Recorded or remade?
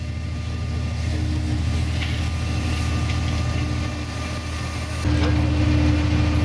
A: recorded